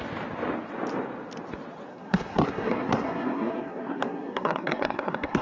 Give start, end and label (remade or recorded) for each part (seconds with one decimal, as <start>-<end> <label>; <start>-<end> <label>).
0.0-1.9 recorded; 1.9-5.4 remade